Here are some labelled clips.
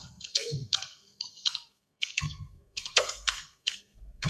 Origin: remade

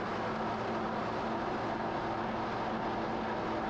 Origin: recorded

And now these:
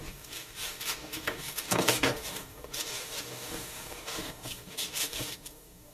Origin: remade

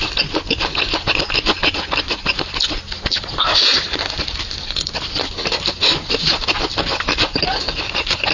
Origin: recorded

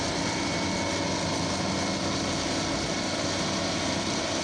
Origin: recorded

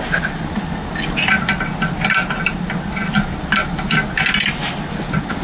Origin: recorded